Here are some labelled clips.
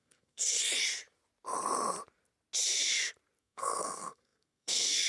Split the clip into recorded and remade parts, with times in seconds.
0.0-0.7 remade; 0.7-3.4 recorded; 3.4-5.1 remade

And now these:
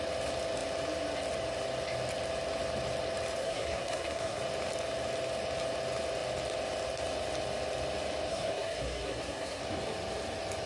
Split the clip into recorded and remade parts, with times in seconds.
0.0-3.4 recorded; 3.4-4.4 remade; 4.4-8.3 recorded; 8.3-9.6 remade; 9.6-10.7 recorded